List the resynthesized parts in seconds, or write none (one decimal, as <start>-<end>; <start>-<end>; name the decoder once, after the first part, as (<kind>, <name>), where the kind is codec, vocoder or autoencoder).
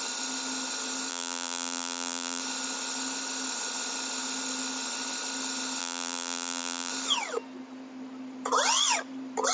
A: 1.1-2.4 (vocoder, BigVGAN v2); 5.8-6.9